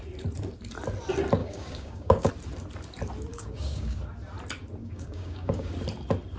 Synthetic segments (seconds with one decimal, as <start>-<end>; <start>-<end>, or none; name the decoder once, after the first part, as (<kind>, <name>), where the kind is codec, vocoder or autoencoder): 1.4-2.3 (codec, DAC); 3.3-4.0; 4.8-5.7